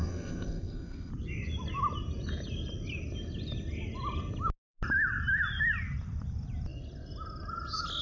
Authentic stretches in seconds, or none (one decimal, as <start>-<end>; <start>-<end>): 1.1-8.0